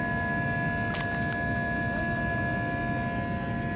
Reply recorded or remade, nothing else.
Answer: recorded